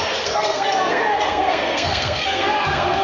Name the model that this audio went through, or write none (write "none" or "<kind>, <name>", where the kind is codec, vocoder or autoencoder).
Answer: codec, SNAC